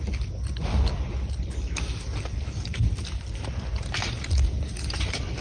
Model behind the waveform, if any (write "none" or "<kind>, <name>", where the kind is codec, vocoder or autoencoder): none